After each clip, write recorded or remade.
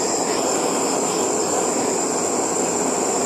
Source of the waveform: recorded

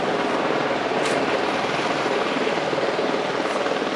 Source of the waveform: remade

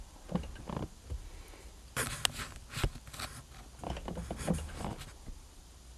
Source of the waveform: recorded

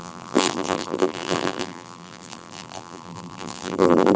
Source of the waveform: remade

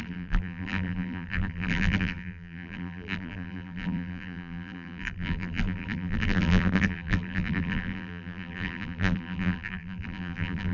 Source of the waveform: remade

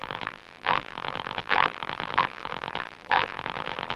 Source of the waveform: remade